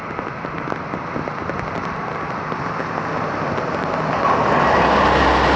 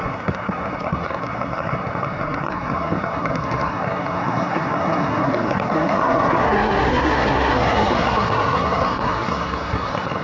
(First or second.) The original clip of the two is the first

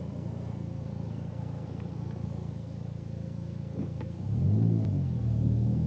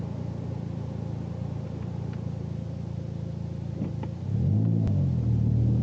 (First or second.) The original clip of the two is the second